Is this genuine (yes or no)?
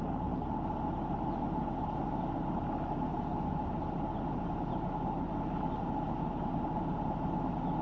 yes